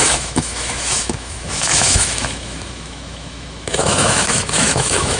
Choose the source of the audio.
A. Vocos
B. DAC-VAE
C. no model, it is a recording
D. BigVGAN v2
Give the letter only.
B